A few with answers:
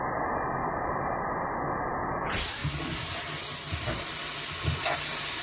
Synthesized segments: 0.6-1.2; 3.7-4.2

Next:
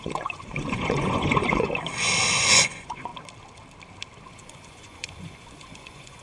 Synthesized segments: 0.0-1.8; 2.4-3.1; 4.3-6.2

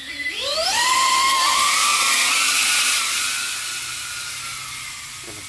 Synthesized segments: 0.6-1.3